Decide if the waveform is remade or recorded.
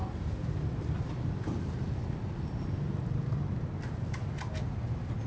recorded